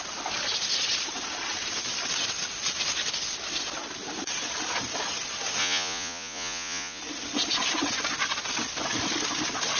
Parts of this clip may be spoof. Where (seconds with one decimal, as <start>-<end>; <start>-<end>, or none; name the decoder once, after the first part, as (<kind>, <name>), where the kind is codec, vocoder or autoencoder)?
5.6-7.0 (vocoder, Vocos)